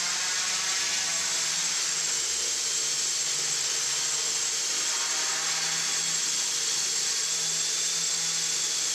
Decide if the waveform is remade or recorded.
recorded